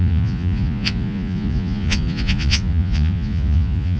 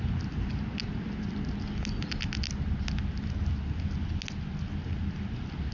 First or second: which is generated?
first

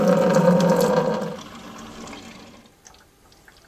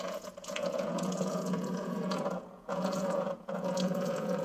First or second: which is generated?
second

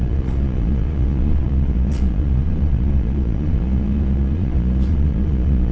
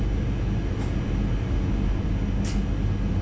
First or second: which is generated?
first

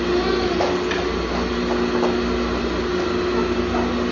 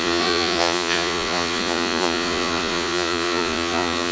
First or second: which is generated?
second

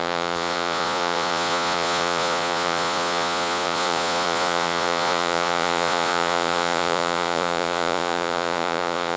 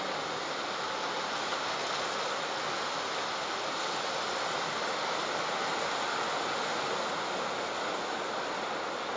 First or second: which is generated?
first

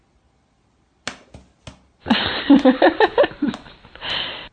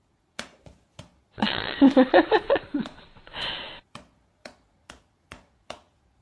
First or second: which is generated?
second